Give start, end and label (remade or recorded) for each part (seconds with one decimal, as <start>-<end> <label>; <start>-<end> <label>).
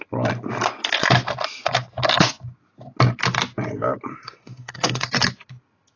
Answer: 0.0-4.1 recorded; 4.1-5.1 remade; 5.1-6.0 recorded